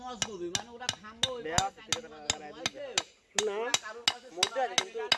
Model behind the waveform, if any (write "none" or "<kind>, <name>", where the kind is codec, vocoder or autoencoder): none